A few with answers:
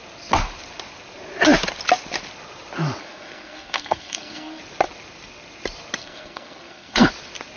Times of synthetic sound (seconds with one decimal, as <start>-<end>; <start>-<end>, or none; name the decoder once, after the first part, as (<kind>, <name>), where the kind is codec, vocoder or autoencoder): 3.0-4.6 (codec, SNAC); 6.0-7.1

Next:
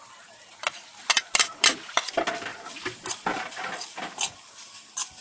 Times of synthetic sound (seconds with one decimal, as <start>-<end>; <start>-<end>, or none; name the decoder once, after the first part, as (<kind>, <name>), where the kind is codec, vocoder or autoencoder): 0.9-2.0 (vocoder, BigVGAN v2)

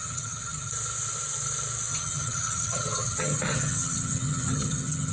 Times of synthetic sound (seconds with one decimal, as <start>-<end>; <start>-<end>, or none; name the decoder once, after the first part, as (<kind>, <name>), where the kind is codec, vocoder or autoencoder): 0.0-0.7 (vocoder, HiFi-GAN); 1.9-5.1